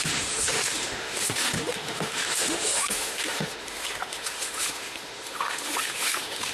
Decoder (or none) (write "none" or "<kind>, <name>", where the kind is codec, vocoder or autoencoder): autoencoder, DAC-VAE